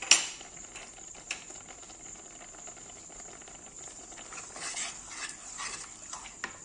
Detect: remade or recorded recorded